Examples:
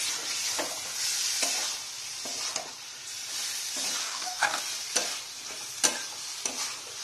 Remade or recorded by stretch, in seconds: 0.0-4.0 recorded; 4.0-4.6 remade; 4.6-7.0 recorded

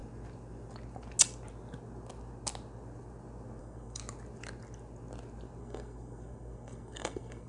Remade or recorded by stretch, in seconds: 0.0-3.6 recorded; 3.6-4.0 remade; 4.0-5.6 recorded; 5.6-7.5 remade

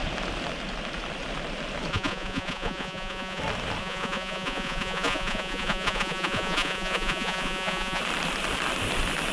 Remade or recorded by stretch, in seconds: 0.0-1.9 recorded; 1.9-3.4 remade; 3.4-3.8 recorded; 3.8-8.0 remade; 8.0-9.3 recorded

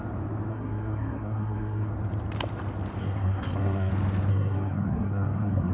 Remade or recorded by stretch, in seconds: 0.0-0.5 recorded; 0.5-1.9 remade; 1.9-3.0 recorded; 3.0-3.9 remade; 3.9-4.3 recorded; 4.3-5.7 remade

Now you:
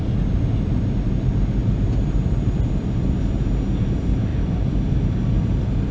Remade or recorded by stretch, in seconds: 0.0-1.6 recorded; 1.6-3.2 remade; 3.2-5.9 recorded

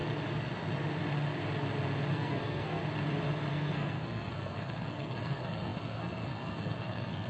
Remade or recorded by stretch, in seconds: 0.0-2.1 recorded; 2.1-2.8 remade; 2.8-3.5 recorded; 3.5-7.3 remade